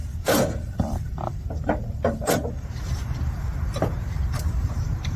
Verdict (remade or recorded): remade